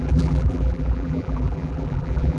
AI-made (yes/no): yes